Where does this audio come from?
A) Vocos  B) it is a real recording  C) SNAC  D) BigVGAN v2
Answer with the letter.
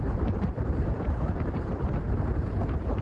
D